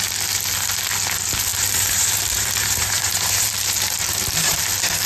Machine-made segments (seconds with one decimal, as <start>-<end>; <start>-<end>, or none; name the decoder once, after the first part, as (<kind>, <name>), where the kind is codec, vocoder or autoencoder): 1.5-4.6 (vocoder, BigVGAN v2)